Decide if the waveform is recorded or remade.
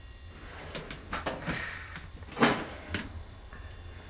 recorded